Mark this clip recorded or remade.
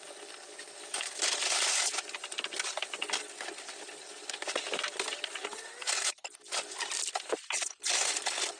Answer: recorded